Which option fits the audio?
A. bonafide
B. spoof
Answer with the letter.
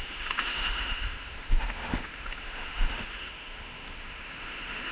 B